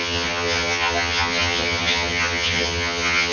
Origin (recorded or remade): remade